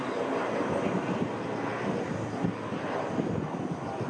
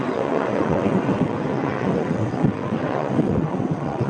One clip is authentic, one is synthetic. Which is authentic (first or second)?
first